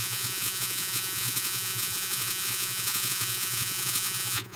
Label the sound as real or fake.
fake